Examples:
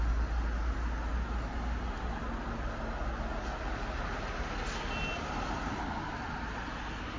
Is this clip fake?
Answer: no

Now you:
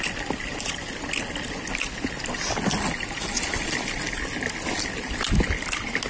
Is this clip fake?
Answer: no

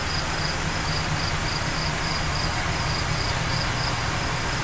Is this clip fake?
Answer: no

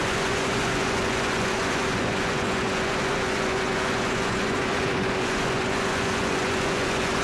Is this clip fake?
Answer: yes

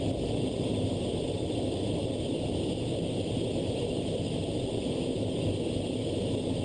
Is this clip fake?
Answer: no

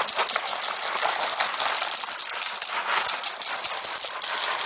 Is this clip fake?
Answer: no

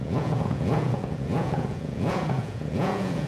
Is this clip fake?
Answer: yes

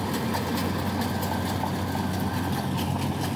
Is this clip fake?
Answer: no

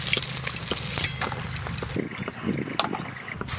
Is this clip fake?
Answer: no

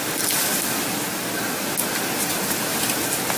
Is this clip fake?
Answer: no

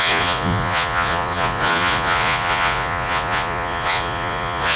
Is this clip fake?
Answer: yes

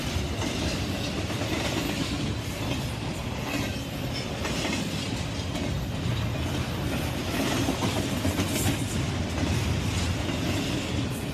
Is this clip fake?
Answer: no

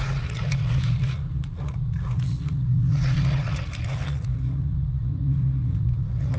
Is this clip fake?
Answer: yes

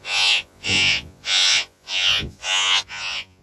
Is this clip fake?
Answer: yes